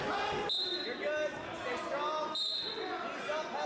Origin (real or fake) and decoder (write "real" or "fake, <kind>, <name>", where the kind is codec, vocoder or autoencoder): real